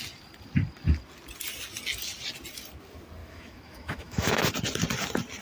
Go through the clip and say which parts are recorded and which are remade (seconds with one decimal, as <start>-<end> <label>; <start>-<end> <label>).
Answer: 0.0-3.2 recorded; 3.2-4.4 remade; 4.4-5.4 recorded